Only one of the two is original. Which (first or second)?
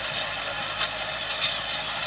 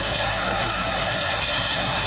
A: first